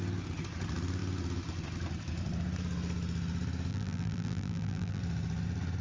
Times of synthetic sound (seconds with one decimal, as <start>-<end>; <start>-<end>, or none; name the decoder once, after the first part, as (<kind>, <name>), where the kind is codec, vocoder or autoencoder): 3.7-5.0 (vocoder, BigVGAN v2)